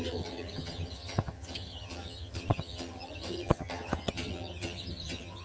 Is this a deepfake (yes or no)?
yes